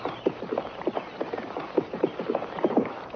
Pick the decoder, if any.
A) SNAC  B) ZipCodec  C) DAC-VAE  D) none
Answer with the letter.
D